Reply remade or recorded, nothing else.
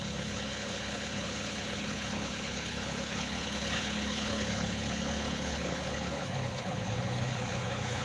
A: remade